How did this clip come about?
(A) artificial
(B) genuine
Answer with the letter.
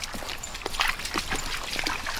B